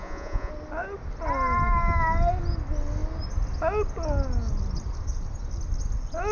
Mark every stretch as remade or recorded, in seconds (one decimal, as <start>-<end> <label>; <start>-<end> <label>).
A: 0.0-0.5 remade; 0.5-6.3 recorded